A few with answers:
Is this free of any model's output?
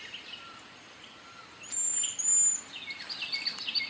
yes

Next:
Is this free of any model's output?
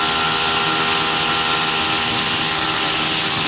yes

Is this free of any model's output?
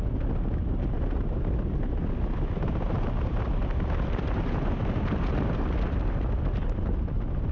yes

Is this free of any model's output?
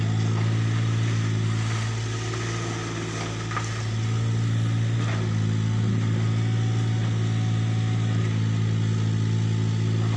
yes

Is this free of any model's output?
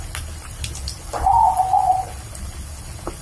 yes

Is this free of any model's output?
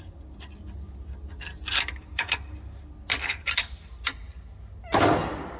yes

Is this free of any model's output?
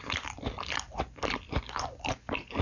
yes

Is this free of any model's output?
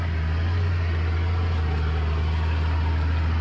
yes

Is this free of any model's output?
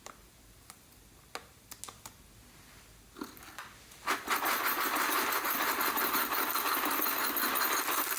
yes